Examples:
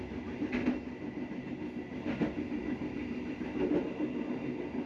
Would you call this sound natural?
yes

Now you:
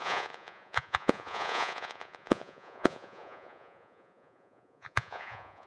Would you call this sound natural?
no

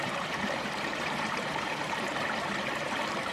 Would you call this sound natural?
no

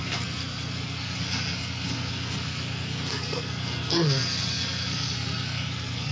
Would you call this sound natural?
no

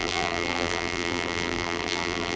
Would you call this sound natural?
no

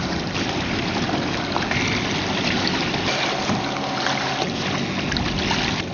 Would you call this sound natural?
yes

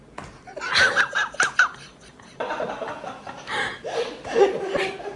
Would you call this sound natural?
yes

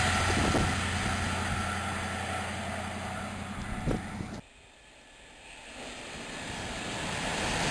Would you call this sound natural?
yes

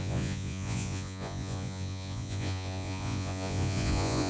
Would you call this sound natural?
no